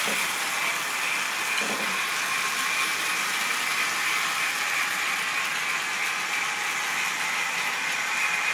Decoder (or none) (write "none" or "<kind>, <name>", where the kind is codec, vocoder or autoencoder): none